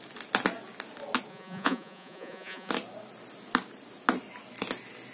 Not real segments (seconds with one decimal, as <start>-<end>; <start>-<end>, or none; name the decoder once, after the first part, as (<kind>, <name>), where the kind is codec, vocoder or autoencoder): 1.3-2.7 (vocoder, Vocos)